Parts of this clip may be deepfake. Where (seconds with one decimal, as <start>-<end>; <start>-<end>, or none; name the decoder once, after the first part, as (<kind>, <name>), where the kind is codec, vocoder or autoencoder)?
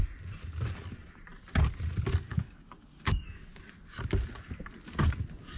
2.3-3.6 (codec, DAC)